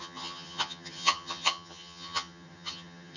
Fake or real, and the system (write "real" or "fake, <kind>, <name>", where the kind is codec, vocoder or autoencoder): fake, vocoder, HiFi-GAN